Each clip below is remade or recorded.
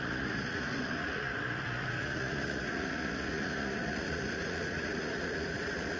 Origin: remade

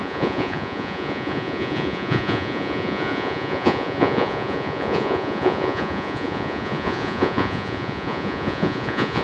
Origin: remade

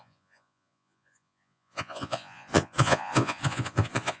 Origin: remade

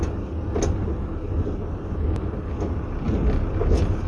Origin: recorded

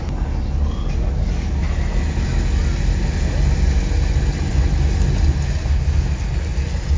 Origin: recorded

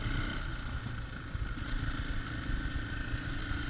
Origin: recorded